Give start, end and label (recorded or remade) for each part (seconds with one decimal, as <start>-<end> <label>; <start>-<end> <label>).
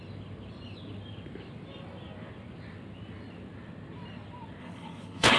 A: 0.0-4.6 recorded; 4.6-5.4 remade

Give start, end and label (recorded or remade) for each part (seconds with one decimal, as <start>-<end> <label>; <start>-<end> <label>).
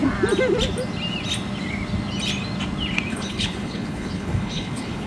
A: 0.0-3.1 recorded; 3.1-5.1 remade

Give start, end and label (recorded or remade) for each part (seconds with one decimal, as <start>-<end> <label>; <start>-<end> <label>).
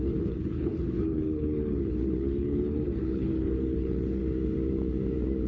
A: 0.0-4.2 remade; 4.2-5.5 recorded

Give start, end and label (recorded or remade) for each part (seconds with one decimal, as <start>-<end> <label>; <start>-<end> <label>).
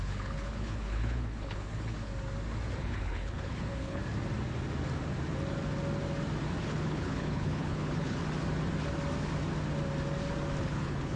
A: 0.0-2.1 remade; 2.1-2.8 recorded; 2.8-4.0 remade; 4.0-6.6 recorded; 6.6-8.2 remade; 8.2-10.6 recorded; 10.6-11.2 remade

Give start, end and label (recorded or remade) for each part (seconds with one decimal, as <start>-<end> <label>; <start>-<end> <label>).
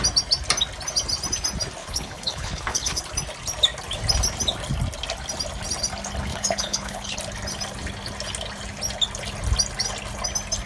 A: 0.0-1.8 recorded; 1.8-3.0 remade; 3.0-6.3 recorded; 6.3-7.2 remade; 7.2-10.7 recorded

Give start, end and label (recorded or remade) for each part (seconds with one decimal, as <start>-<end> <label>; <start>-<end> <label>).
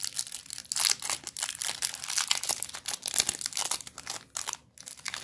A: 0.0-5.2 recorded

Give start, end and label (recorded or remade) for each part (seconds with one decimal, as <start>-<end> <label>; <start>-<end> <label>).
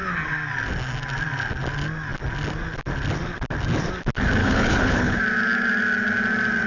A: 0.0-4.4 recorded; 4.4-5.2 remade; 5.2-6.7 recorded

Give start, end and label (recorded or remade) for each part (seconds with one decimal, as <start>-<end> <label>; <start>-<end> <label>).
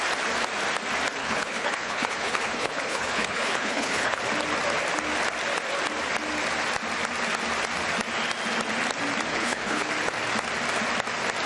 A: 0.0-1.2 recorded; 1.2-4.2 remade; 4.2-9.3 recorded; 9.3-9.9 remade; 9.9-11.5 recorded